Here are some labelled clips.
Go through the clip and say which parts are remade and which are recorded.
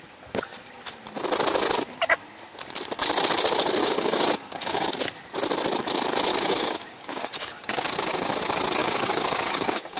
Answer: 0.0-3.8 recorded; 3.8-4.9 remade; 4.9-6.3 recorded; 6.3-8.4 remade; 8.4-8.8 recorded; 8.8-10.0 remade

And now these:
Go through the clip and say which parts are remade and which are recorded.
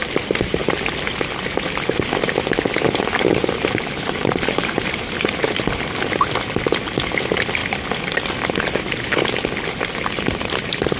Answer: 0.0-0.9 remade; 0.9-3.3 recorded; 3.3-5.4 remade; 5.4-11.0 recorded